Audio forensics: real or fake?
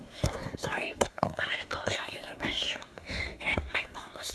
fake